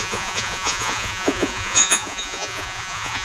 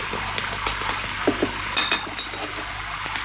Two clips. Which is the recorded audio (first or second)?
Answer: second